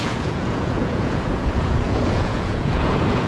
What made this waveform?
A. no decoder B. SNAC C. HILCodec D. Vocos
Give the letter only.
D